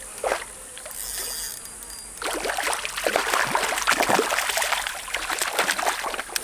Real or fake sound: real